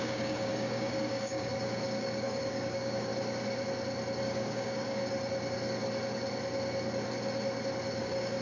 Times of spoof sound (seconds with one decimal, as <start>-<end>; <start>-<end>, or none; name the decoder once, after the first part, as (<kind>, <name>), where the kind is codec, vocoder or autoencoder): 0.0-3.1 (codec, DAC); 4.2-5.0; 8.0-8.4